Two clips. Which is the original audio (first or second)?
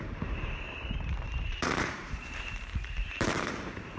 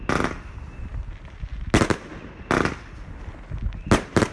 second